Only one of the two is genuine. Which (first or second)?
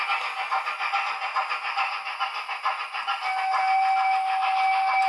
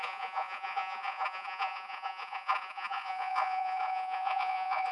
first